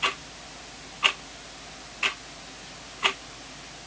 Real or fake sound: real